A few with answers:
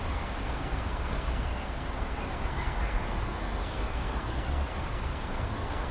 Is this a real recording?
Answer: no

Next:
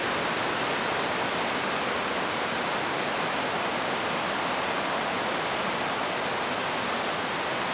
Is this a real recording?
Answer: yes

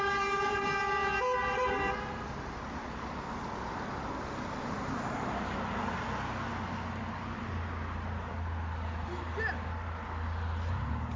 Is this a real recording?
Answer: yes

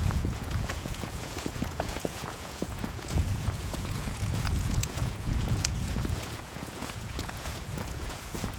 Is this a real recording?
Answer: no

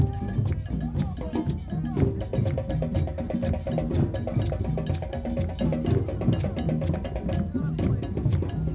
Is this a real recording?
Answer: yes